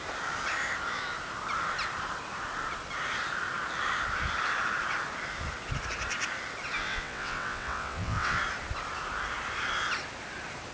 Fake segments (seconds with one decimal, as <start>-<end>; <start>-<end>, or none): 6.8-8.4